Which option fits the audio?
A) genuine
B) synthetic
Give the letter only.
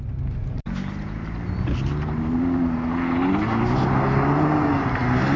A